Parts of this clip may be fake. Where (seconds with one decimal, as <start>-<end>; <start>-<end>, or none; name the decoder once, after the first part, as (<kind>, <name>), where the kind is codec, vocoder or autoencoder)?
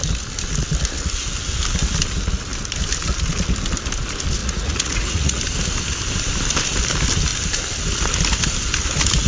4.4-5.4 (vocoder, Vocos)